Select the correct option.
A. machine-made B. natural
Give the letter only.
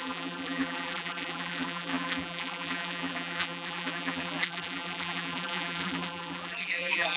A